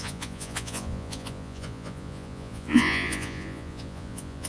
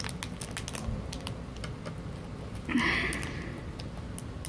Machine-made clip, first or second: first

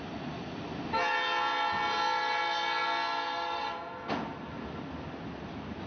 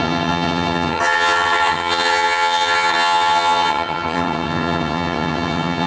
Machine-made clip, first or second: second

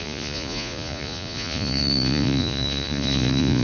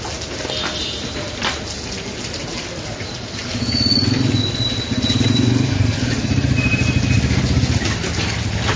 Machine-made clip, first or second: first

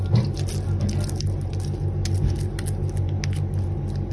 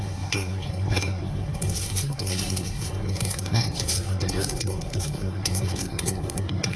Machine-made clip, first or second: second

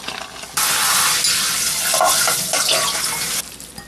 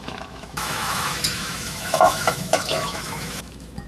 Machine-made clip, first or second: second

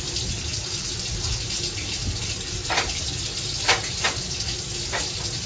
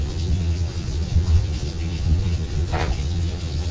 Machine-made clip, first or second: second